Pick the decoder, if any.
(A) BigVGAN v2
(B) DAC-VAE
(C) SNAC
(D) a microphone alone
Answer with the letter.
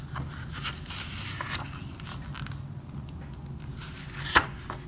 D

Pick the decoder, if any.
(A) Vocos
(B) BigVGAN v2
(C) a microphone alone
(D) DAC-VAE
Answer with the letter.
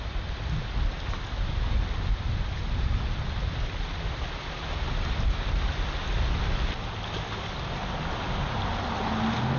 C